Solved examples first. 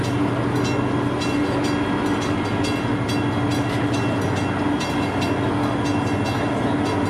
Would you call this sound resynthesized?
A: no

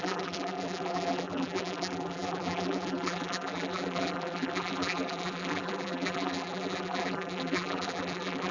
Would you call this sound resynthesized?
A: yes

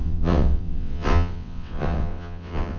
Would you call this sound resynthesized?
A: yes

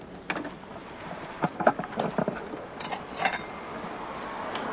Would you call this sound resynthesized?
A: no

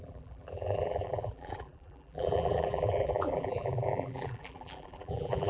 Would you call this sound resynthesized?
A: yes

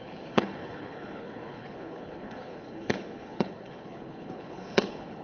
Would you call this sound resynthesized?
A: yes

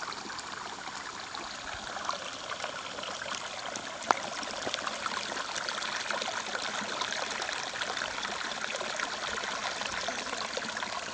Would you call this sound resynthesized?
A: no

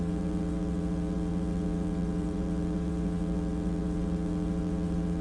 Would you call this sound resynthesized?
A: yes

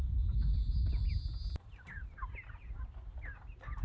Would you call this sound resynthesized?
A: no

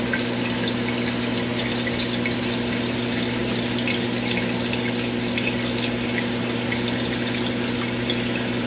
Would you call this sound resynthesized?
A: no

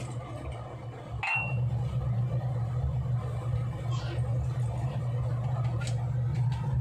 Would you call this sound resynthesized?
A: no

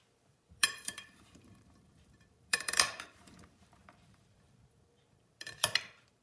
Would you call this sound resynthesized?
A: yes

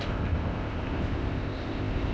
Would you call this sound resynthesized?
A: yes